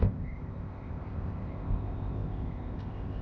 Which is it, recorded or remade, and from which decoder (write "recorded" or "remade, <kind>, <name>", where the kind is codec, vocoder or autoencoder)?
remade, codec, ZipCodec